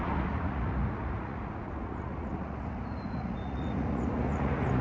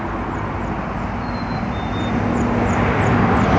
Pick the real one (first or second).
second